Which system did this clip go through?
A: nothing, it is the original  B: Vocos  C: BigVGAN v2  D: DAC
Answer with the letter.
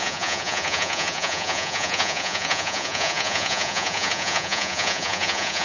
B